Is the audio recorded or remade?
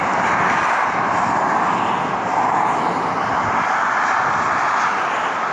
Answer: recorded